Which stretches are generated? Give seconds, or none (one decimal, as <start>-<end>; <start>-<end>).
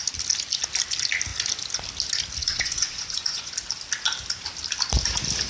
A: 2.4-3.5